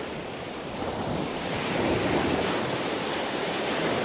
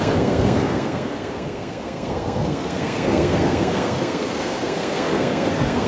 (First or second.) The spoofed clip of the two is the second